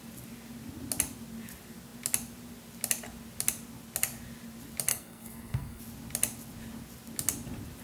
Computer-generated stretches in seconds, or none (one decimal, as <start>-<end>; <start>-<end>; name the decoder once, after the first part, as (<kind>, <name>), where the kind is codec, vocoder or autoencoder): 4.9-5.8 (codec, SNAC)